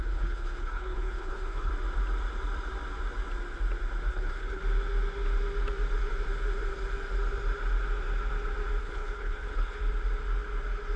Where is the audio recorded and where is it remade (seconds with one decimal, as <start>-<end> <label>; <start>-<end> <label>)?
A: 0.0-1.7 remade; 1.7-4.1 recorded; 4.1-4.6 remade; 4.6-8.8 recorded; 8.8-9.8 remade; 9.8-11.0 recorded